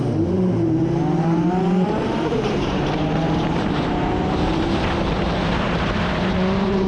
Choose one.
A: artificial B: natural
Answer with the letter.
A